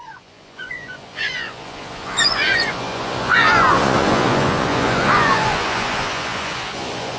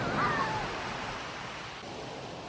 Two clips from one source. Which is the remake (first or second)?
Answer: first